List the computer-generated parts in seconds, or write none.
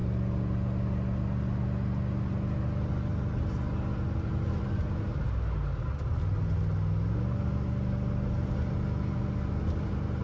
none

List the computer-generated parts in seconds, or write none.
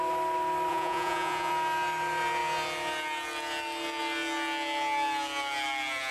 0.7-1.5 (vocoder, Vocos)